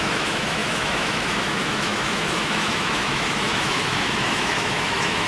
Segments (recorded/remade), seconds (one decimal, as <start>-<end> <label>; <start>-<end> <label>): 0.0-5.3 remade